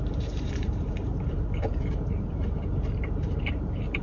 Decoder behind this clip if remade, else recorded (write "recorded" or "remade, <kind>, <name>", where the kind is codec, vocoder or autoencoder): remade, vocoder, BigVGAN v2